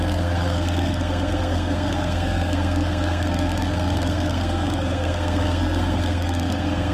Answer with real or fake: fake